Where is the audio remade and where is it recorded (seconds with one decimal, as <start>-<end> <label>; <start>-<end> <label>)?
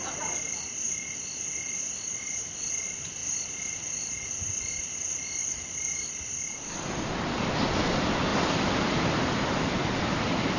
0.0-3.2 recorded; 3.2-3.9 remade; 3.9-5.4 recorded; 5.4-7.5 remade; 7.5-8.3 recorded; 8.3-9.7 remade; 9.7-10.6 recorded